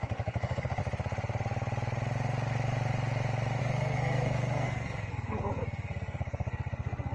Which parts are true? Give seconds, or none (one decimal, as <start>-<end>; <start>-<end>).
0.8-3.6